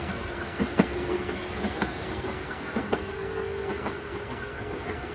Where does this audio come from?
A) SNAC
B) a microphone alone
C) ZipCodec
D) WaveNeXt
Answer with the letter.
A